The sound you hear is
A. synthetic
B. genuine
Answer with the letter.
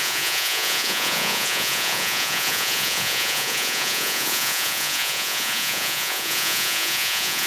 A